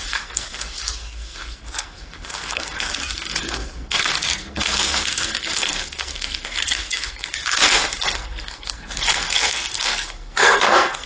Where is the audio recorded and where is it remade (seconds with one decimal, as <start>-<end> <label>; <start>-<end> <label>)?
0.0-11.1 remade